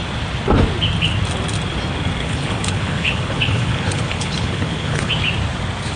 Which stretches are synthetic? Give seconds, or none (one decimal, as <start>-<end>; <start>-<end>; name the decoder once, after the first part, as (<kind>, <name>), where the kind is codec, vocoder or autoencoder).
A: 2.2-5.1 (codec, HILCodec)